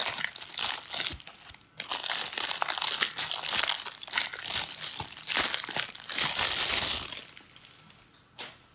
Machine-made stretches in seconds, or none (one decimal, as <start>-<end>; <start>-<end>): none

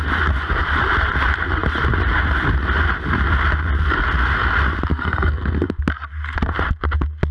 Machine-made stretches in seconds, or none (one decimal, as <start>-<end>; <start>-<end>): 4.9-5.8

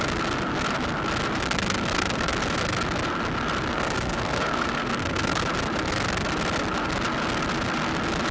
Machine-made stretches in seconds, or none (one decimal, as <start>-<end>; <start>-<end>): 1.4-2.3; 3.7-5.4

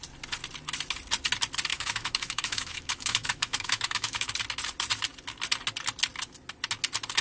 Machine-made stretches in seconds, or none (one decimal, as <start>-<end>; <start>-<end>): 1.7-4.3

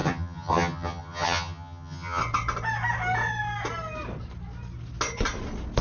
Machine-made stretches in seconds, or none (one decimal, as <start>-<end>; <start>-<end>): 0.0-2.2